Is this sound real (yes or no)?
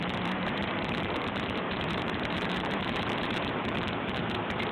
no